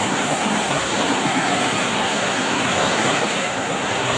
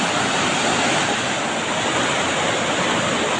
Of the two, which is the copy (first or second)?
first